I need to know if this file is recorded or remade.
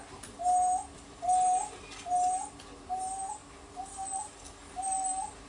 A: recorded